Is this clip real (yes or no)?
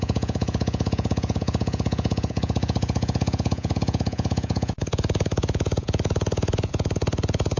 no